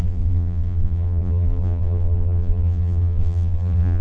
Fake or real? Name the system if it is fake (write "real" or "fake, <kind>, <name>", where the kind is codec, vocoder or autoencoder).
fake, vocoder, BigVGAN v2